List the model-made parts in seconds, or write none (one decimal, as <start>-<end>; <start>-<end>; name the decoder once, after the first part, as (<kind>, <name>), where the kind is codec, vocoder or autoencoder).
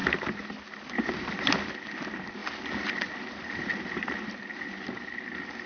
none